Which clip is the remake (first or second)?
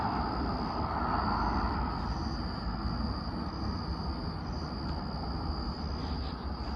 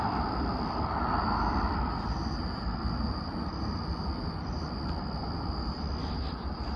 second